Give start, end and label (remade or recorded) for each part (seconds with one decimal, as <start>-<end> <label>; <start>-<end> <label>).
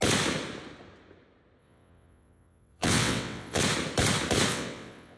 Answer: 0.0-1.6 recorded; 1.6-3.6 remade; 3.6-4.5 recorded; 4.5-5.2 remade